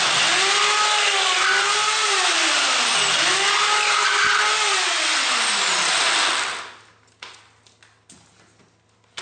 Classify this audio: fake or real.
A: real